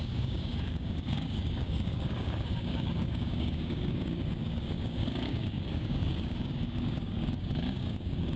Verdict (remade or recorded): remade